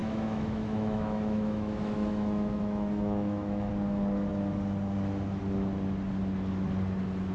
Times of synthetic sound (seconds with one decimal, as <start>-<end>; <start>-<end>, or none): 0.0-3.7